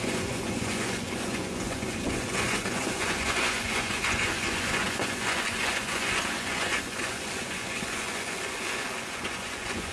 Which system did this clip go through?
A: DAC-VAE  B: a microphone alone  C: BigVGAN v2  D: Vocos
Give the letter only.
D